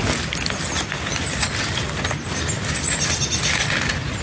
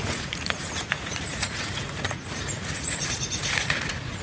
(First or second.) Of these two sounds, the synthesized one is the second